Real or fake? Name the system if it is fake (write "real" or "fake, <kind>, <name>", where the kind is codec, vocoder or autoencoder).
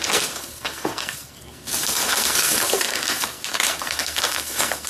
fake, codec, SNAC